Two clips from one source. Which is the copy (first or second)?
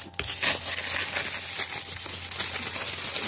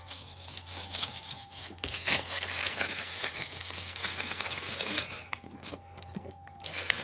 second